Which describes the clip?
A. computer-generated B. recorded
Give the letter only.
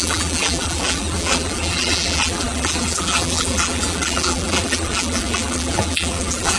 A